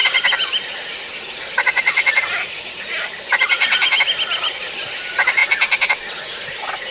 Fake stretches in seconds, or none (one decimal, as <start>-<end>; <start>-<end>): none